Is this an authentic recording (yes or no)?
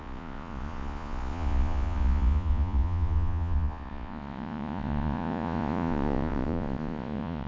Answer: no